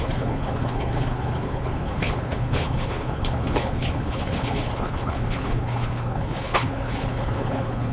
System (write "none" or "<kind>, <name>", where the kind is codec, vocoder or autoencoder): codec, HILCodec